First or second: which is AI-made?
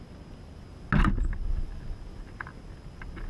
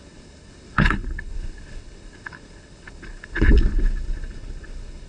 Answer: second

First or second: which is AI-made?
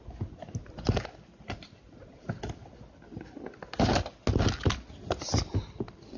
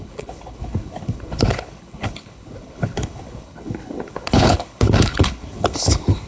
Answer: second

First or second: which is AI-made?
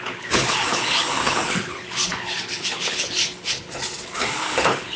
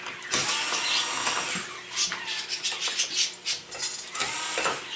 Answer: first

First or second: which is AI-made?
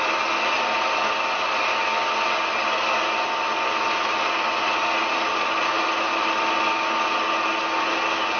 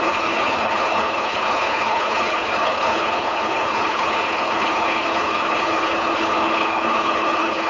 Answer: second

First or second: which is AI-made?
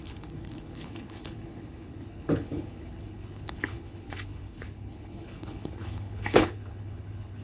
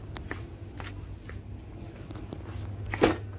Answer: first